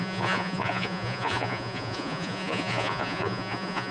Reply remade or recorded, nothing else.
remade